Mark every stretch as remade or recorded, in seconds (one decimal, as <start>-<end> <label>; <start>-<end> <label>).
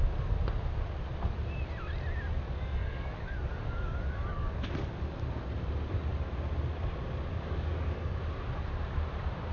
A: 0.0-2.8 recorded; 2.8-4.5 remade; 4.5-7.3 recorded; 7.3-8.2 remade; 8.2-9.5 recorded